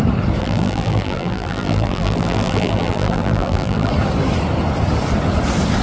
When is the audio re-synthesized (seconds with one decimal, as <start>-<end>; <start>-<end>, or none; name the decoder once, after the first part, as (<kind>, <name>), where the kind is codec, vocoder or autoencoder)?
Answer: 0.4-3.9 (vocoder, BigVGAN v2)